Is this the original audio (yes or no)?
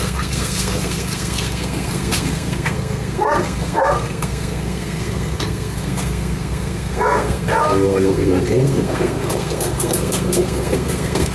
no